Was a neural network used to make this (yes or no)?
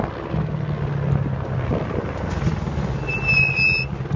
no